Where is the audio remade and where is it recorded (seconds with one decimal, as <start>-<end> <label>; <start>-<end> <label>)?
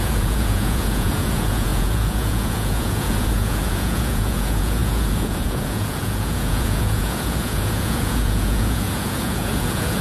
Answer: 0.0-10.0 remade